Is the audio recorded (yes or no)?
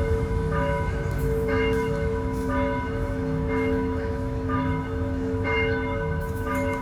no